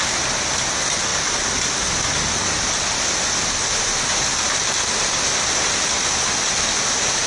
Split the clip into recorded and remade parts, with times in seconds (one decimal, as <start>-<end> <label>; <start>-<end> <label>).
0.0-1.1 recorded; 1.1-5.5 remade; 5.5-7.3 recorded